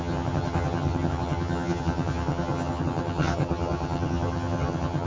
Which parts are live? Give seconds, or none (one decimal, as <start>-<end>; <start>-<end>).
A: none